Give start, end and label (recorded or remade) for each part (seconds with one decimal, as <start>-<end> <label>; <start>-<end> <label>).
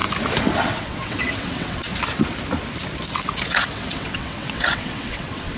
0.0-0.7 recorded; 0.7-1.9 remade; 1.9-3.4 recorded; 3.4-5.6 remade